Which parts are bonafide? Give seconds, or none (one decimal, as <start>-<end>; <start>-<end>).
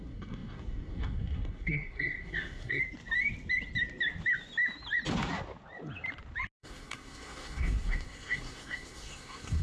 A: 2.8-6.6